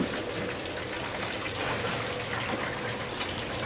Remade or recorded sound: recorded